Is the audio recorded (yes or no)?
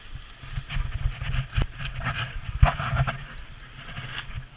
yes